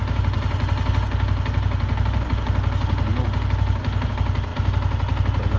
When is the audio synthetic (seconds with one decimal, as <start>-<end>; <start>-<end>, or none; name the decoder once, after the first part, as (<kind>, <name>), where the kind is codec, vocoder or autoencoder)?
none